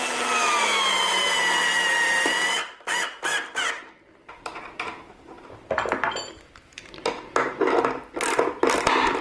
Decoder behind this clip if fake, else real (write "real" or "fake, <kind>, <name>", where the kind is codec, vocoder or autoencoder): real